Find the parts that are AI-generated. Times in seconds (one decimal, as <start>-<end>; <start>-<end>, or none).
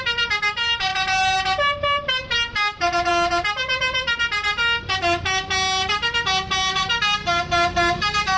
none